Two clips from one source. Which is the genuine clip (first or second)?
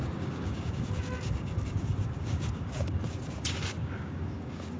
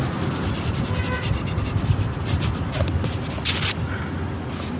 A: second